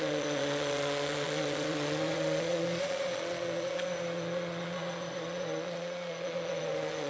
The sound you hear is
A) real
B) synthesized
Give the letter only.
B